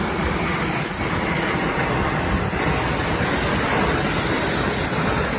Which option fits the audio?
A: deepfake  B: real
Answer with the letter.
B